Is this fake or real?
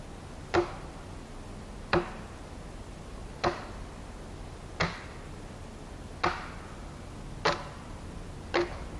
real